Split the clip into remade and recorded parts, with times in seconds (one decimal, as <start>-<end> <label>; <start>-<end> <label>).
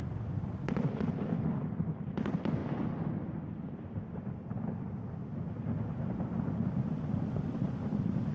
0.0-8.3 recorded